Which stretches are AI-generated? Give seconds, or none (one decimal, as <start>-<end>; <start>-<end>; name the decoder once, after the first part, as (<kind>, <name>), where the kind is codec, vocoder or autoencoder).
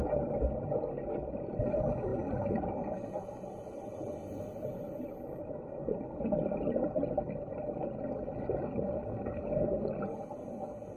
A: none